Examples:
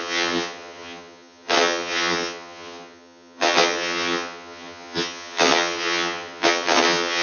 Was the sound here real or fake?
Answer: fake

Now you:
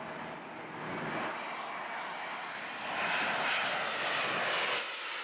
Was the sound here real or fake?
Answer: real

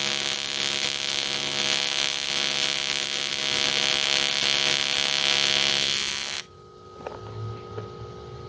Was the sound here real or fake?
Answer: real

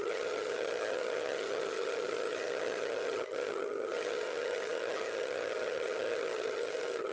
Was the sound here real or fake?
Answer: fake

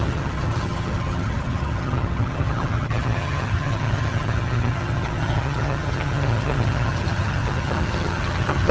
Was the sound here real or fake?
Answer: fake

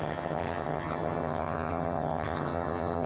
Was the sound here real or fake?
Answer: fake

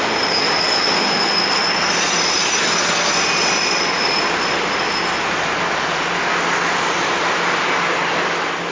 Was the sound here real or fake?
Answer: real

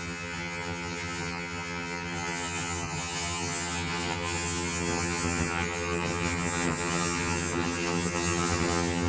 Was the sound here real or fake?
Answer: fake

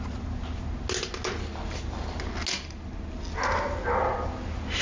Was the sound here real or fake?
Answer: real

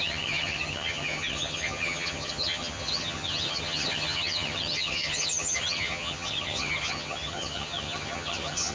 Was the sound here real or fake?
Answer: fake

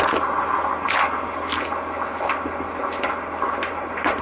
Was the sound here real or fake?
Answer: real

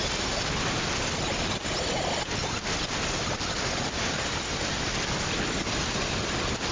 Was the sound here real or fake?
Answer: real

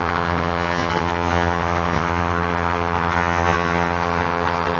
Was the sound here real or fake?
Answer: fake